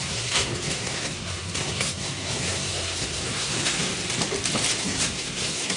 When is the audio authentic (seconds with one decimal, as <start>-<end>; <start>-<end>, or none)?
3.9-4.8